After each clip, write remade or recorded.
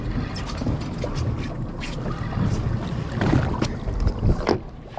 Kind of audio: recorded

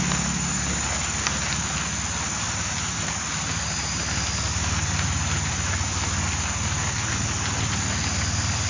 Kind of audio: recorded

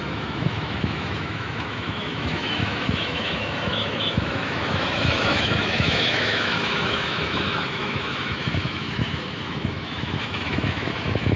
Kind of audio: remade